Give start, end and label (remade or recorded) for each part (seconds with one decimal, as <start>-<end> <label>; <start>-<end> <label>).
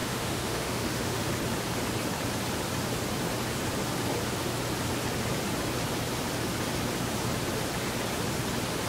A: 0.0-1.3 remade; 1.3-8.9 recorded